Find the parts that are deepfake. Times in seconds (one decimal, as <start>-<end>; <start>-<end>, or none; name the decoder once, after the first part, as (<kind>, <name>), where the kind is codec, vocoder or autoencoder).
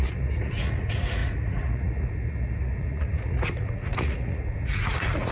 0.0-5.3 (vocoder, Vocos)